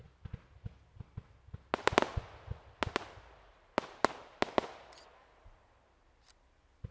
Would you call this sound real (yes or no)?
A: yes